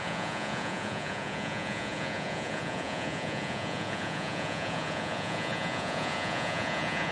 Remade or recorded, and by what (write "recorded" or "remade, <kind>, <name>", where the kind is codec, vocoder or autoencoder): remade, vocoder, Vocos